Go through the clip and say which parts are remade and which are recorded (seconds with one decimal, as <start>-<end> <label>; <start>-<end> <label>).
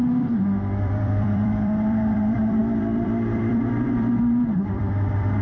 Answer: 0.0-5.4 remade